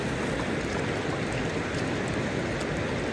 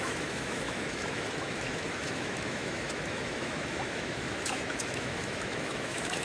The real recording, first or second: first